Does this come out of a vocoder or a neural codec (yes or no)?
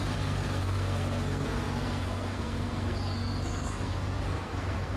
yes